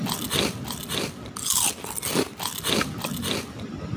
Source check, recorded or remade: recorded